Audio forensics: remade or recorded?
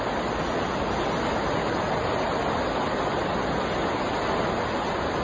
recorded